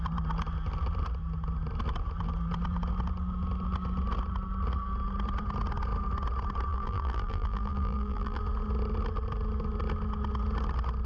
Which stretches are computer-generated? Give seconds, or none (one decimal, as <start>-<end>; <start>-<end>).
6.7-8.4